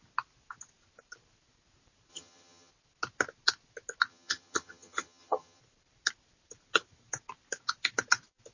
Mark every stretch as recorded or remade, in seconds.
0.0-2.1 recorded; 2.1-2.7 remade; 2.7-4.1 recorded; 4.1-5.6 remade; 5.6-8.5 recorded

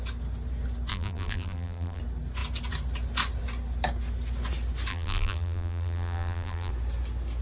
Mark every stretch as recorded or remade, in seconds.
0.0-0.9 recorded; 0.9-2.0 remade; 2.0-4.9 recorded; 4.9-6.7 remade; 6.7-7.4 recorded

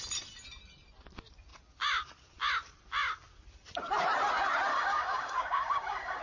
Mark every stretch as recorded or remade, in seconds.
0.0-4.7 recorded; 4.7-6.2 remade